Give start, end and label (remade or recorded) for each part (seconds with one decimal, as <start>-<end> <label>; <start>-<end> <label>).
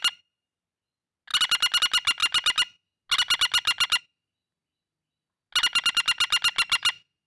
0.0-7.3 recorded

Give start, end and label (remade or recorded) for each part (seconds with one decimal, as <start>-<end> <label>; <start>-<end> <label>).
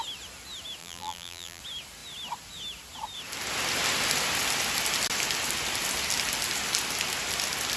0.0-0.8 recorded; 0.8-1.6 remade; 1.6-7.8 recorded